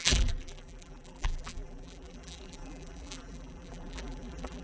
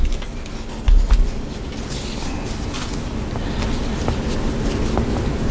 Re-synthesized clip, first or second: first